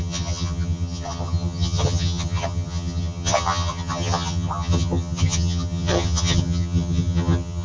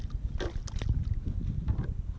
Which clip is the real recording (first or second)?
second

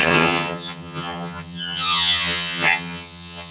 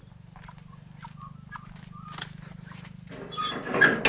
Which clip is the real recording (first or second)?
second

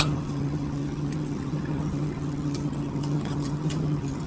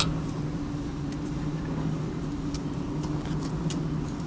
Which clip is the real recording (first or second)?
second